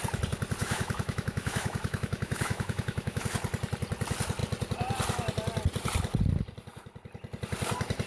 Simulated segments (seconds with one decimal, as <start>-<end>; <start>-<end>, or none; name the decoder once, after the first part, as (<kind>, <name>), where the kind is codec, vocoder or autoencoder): 0.6-3.2 (autoencoder, DAC-VAE)